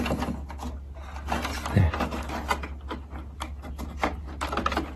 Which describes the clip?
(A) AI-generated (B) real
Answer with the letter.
B